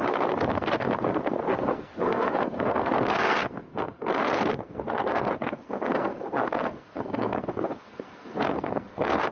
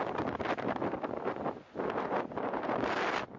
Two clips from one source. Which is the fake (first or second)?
first